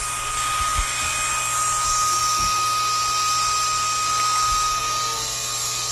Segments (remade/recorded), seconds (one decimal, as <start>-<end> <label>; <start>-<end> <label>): 0.0-5.9 recorded